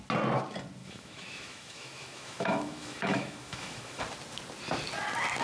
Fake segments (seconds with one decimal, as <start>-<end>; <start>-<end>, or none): 0.8-4.0